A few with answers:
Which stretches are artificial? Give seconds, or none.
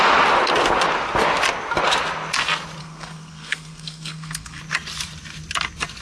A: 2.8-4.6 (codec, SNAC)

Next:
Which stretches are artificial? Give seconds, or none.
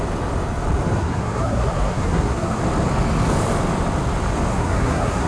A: 1.0-2.6 (codec, SNAC); 4.5-5.3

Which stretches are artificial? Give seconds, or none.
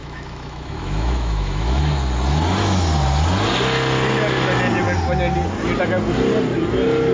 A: 0.0-1.8 (autoencoder, DAC-VAE)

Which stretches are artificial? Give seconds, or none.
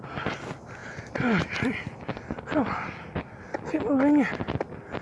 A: none